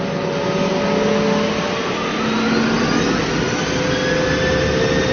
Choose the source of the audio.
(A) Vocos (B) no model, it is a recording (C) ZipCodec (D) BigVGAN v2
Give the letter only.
B